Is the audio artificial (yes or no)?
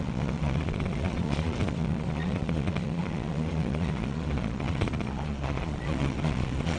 yes